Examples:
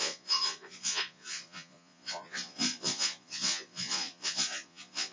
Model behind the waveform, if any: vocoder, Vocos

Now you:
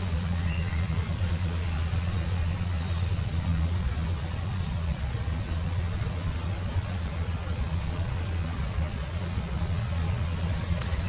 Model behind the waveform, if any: vocoder, Vocos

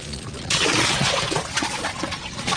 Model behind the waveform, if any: vocoder, Vocos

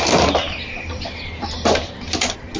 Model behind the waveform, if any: none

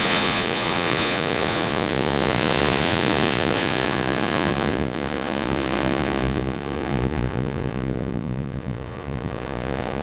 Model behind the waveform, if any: vocoder, Vocos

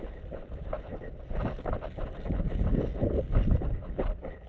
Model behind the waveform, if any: none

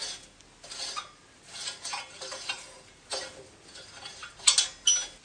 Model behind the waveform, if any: none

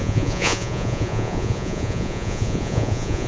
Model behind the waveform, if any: vocoder, Vocos